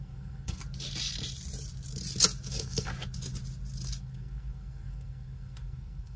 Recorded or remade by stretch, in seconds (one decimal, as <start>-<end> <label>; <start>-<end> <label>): 0.0-0.6 remade; 0.6-2.5 recorded; 2.5-2.9 remade; 2.9-4.0 recorded; 4.0-6.2 remade